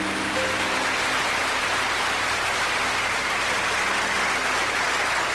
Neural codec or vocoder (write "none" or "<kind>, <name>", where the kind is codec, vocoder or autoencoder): none